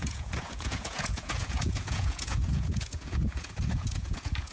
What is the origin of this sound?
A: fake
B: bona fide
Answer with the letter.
A